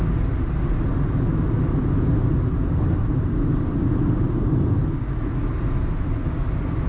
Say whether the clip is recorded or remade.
recorded